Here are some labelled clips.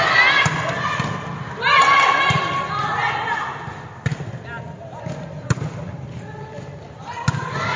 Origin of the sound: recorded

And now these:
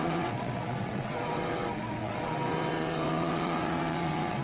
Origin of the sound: remade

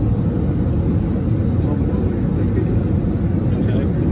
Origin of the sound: recorded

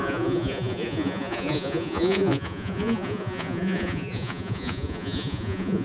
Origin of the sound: remade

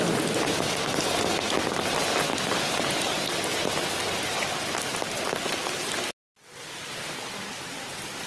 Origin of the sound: recorded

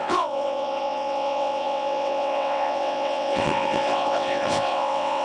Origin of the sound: remade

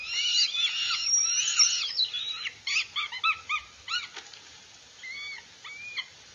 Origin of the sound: recorded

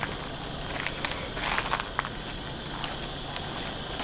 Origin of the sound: recorded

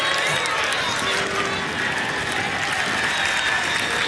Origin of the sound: recorded